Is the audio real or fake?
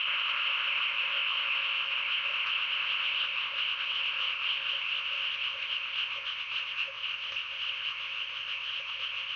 fake